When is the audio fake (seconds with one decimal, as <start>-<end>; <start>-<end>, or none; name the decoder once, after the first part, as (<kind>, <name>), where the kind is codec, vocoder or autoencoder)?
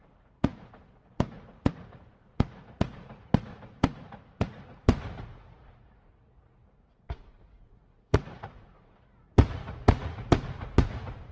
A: 0.0-11.3 (vocoder, Vocos)